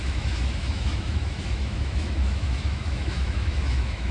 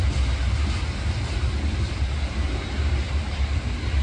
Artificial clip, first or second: first